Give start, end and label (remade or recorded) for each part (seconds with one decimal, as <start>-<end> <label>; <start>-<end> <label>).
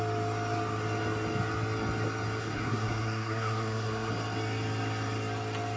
0.0-2.4 recorded; 2.4-4.1 remade; 4.1-5.8 recorded